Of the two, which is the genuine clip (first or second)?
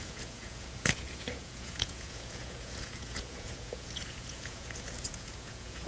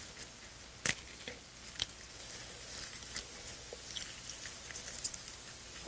second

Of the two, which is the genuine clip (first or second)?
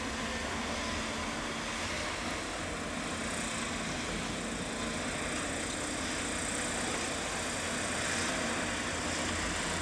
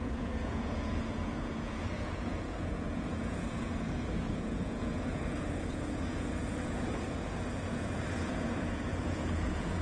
first